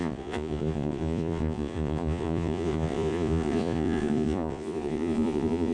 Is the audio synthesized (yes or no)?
yes